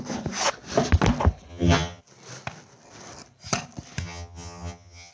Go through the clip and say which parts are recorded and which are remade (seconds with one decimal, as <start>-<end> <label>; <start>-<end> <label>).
0.0-1.5 recorded; 1.5-2.0 remade; 2.0-4.0 recorded; 4.0-5.1 remade